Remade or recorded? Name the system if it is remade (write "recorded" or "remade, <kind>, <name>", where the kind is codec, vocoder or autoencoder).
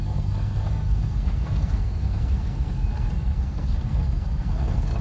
remade, codec, SNAC